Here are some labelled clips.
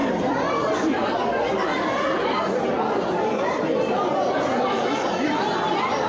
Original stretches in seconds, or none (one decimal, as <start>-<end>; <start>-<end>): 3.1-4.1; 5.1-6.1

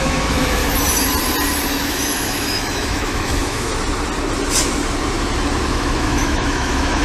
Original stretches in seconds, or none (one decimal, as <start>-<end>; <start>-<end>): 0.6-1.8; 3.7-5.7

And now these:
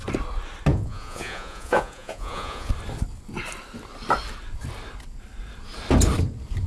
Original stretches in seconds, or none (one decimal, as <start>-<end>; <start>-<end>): 0.0-0.7; 2.7-6.7